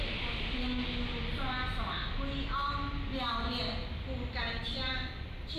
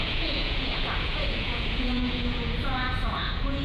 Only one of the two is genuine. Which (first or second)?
first